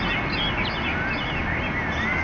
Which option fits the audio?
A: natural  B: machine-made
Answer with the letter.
A